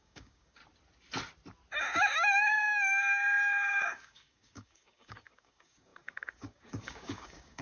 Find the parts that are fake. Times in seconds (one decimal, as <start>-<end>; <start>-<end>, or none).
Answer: 0.0-0.6; 2.0-7.6